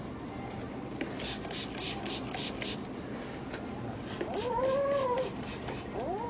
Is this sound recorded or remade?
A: recorded